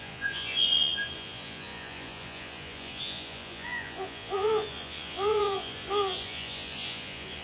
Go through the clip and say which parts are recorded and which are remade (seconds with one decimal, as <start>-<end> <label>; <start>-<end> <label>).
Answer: 0.0-7.4 remade